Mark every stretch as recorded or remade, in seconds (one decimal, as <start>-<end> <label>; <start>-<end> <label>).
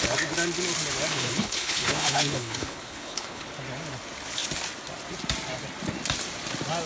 0.0-1.1 recorded; 1.1-3.5 remade; 3.5-6.9 recorded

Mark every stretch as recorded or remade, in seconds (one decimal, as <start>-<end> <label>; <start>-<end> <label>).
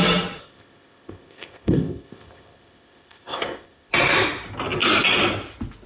0.0-0.4 recorded; 0.4-3.9 remade; 3.9-5.9 recorded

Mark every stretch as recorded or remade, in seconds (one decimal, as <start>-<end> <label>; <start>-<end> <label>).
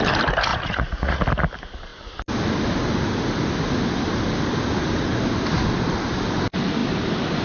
0.0-0.5 recorded; 0.5-1.2 remade; 1.2-7.4 recorded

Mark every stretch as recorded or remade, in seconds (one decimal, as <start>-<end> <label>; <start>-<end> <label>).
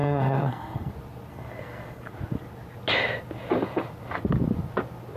0.0-0.9 remade; 0.9-1.3 recorded; 1.3-2.1 remade; 2.1-5.2 recorded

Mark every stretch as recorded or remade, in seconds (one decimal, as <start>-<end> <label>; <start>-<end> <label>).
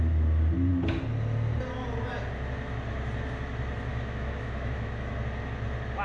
0.0-3.9 recorded; 3.9-5.1 remade; 5.1-6.0 recorded